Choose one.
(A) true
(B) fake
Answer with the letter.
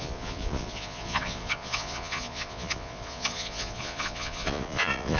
B